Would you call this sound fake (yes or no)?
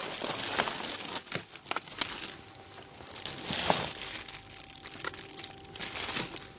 no